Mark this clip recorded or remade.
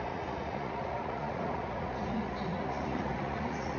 remade